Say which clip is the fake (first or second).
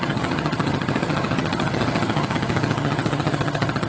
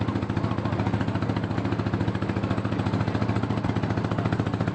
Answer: first